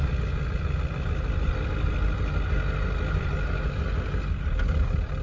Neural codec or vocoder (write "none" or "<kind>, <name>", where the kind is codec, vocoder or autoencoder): none